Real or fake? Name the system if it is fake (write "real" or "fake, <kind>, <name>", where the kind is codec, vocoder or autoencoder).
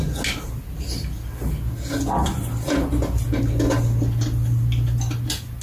real